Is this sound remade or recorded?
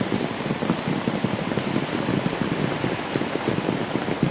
recorded